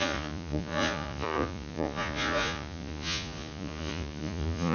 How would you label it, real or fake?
fake